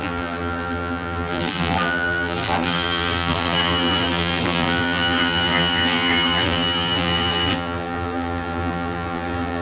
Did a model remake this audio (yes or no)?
yes